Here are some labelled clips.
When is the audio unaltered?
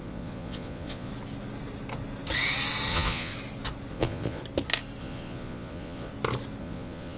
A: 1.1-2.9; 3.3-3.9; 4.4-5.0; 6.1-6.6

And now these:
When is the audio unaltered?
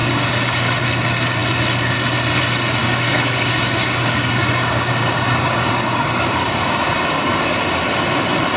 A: 0.8-2.8; 7.4-8.6